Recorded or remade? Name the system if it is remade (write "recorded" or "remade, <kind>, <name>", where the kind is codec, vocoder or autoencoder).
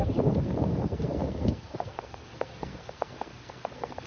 remade, codec, SNAC